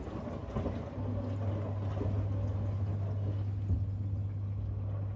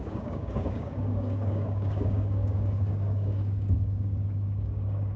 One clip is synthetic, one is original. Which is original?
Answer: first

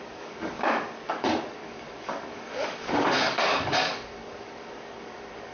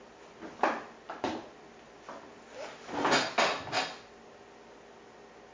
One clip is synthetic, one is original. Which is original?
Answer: second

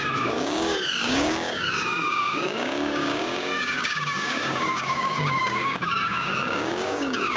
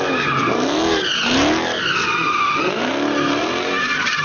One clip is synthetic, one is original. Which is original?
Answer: second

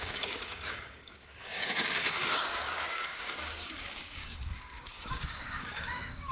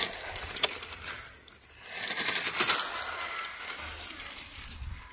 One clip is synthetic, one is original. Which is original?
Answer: second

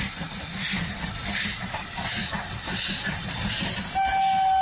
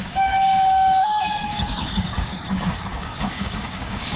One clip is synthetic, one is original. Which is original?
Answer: first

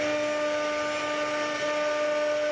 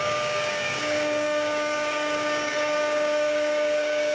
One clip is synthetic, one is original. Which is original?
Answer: first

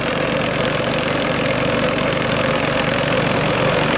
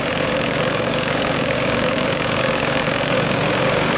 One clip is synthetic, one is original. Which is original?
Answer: first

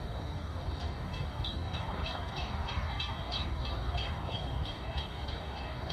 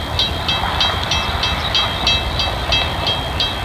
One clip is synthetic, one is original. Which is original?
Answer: second